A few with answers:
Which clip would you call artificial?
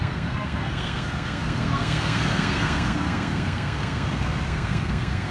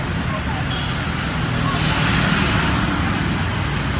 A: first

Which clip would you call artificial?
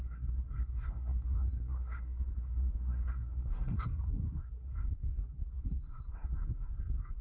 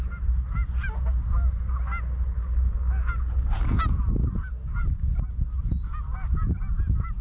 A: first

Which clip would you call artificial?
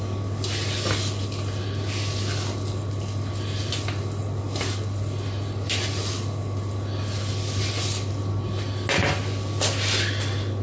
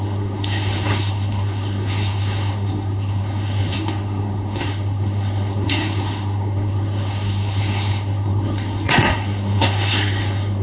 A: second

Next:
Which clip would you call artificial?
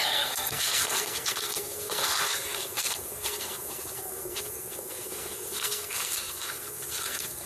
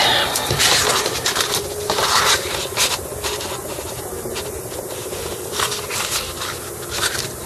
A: first